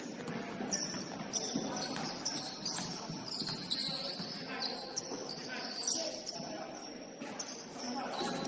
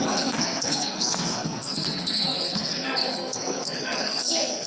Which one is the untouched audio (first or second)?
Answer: first